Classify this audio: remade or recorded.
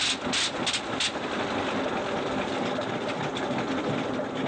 recorded